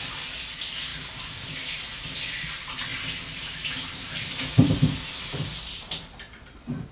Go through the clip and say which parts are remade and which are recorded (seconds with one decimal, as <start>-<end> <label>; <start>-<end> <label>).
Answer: 0.0-6.9 recorded